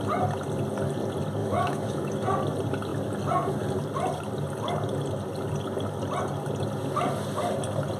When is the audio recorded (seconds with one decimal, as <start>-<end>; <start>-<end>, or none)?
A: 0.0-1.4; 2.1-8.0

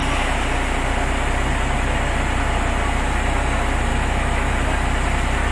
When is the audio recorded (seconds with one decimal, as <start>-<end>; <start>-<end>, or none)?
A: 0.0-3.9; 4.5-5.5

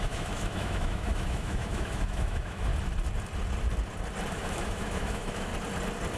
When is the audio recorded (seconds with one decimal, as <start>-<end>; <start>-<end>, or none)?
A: 2.7-4.3; 5.5-6.2